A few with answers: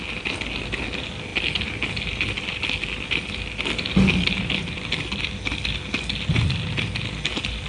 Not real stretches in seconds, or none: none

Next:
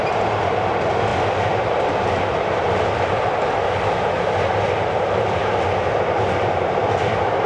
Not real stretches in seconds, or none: none

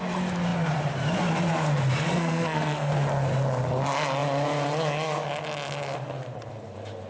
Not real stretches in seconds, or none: 2.1-2.9 (codec, SNAC)

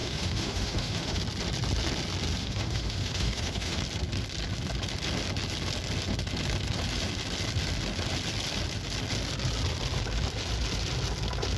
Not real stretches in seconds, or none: 0.0-1.2 (autoencoder, DAC-VAE); 2.4-3.8

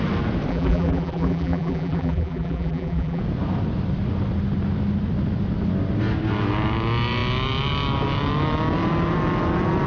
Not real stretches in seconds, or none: 0.5-3.2 (vocoder, BigVGAN v2)

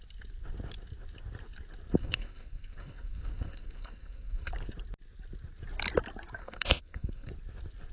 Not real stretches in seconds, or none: 2.0-4.5 (codec, SNAC); 6.4-7.3